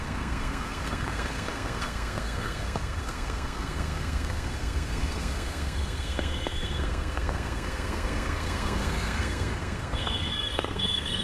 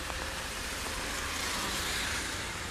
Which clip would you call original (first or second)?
second